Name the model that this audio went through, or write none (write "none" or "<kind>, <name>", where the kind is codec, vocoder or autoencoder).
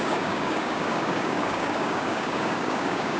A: codec, DAC